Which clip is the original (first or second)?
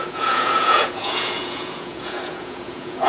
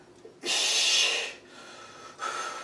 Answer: second